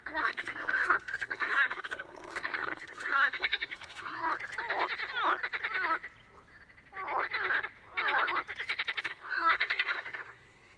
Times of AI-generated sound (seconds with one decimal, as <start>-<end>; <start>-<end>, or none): 0.0-4.3; 9.0-10.8